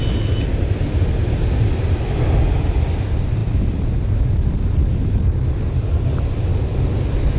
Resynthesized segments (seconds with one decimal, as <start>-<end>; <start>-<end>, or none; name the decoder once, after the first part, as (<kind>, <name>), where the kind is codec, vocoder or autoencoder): none